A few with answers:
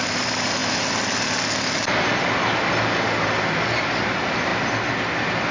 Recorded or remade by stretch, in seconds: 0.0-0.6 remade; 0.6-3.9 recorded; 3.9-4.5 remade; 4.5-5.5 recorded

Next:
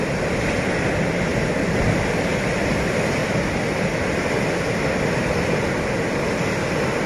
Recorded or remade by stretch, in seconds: 0.0-1.3 recorded; 1.3-1.9 remade; 1.9-3.2 recorded; 3.2-5.9 remade; 5.9-7.1 recorded

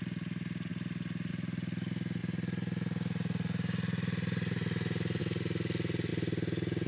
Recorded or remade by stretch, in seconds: 0.0-6.9 recorded

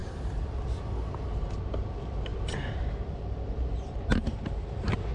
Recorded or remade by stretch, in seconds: 0.0-0.5 remade; 0.5-5.1 recorded

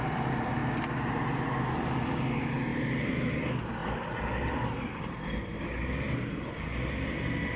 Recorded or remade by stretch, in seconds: 0.0-2.7 recorded; 2.7-3.3 remade; 3.3-7.6 recorded

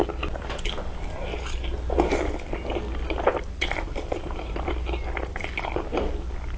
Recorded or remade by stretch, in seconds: 0.0-3.3 recorded; 3.3-4.7 remade; 4.7-6.6 recorded

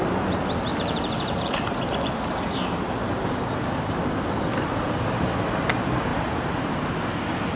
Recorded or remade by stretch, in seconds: 0.0-0.7 recorded; 0.7-3.7 remade; 3.7-4.5 recorded; 4.5-5.4 remade; 5.4-6.1 recorded; 6.1-6.8 remade; 6.8-7.6 recorded

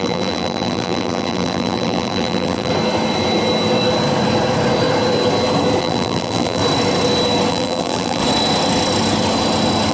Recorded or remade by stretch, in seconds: 0.0-2.7 remade; 2.7-5.8 recorded; 5.8-6.6 remade; 6.6-7.5 recorded; 7.5-8.2 remade; 8.2-9.9 recorded